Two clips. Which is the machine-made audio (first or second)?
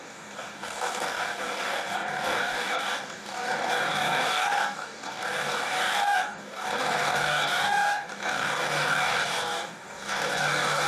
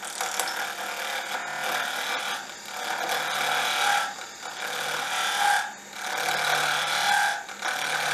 first